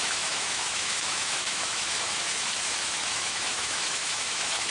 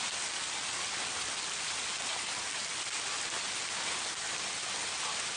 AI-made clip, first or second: first